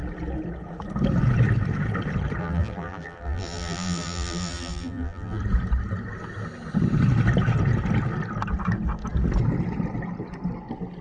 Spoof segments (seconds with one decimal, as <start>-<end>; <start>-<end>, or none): 2.4-5.4